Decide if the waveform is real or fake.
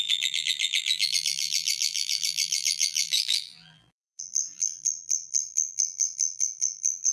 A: fake